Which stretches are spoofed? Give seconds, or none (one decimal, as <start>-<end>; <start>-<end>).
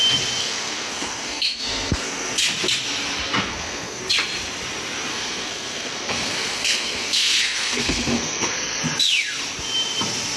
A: 0.4-2.3; 3.4-4.0; 5.1-8.8